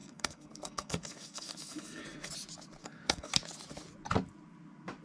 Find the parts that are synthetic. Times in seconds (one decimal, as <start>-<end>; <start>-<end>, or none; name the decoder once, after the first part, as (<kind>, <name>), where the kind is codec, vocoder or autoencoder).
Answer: 0.0-2.3 (codec, SNAC); 2.8-3.3